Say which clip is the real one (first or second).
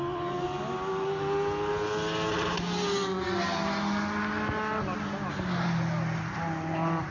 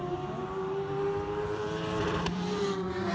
first